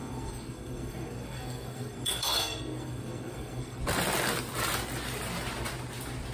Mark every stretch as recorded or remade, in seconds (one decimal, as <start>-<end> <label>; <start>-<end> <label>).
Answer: 0.0-3.8 remade; 3.8-6.3 recorded

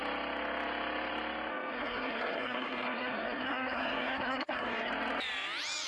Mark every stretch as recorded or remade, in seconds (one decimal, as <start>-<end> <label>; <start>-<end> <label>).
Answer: 0.0-1.5 recorded; 1.5-4.9 remade; 4.9-5.9 recorded

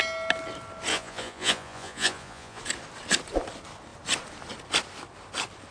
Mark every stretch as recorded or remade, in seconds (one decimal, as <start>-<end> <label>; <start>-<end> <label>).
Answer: 0.0-0.9 recorded; 0.9-2.6 remade; 2.6-5.7 recorded

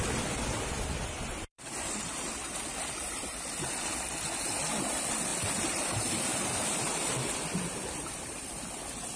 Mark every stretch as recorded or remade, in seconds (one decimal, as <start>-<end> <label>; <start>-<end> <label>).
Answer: 0.0-0.6 recorded; 0.6-9.2 remade

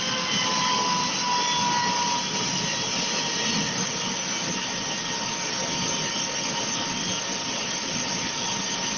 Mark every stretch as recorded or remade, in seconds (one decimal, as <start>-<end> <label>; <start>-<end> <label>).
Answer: 0.0-7.3 recorded; 7.3-9.0 remade

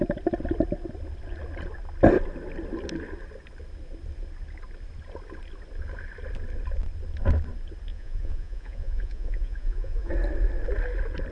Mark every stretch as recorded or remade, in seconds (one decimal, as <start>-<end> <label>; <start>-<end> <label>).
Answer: 0.0-7.9 recorded; 7.9-10.1 remade; 10.1-11.3 recorded

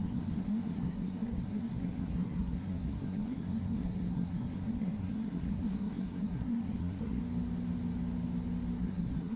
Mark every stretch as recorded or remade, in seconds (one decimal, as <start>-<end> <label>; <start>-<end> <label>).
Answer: 0.0-7.2 remade; 7.2-8.8 recorded; 8.8-9.4 remade